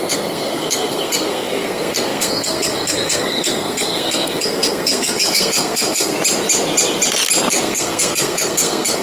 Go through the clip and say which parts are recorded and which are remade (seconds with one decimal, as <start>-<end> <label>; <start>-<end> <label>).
0.0-6.1 remade; 6.1-7.5 recorded; 7.5-9.0 remade